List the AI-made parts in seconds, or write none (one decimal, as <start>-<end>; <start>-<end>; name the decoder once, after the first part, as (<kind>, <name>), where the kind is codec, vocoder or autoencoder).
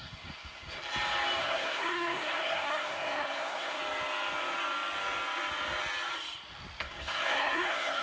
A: 0.0-0.8 (codec, SNAC); 1.4-3.8; 6.8-8.0